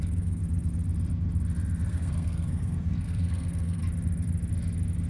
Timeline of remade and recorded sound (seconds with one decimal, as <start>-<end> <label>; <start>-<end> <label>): 0.0-0.4 remade; 0.4-1.9 recorded; 1.9-3.8 remade; 3.8-5.1 recorded